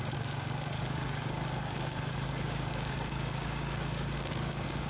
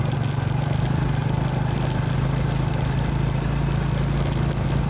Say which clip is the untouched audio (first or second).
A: second